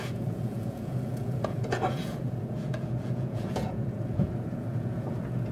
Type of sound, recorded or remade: remade